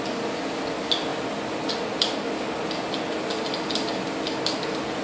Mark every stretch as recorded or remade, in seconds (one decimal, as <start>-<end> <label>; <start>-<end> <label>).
0.0-5.0 recorded